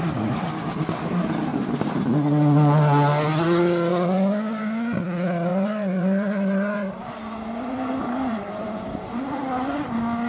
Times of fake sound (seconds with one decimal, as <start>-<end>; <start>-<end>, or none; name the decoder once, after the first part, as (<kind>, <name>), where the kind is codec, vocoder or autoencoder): 1.5-2.0 (vocoder, BigVGAN v2); 5.5-9.2